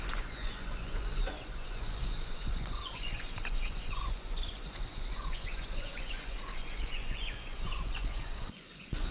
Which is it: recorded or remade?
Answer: remade